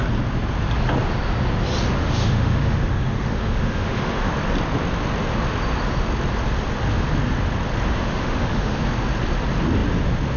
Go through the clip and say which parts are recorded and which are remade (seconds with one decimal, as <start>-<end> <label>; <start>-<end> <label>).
0.0-2.0 recorded; 2.0-4.3 remade; 4.3-7.9 recorded; 7.9-8.8 remade; 8.8-10.4 recorded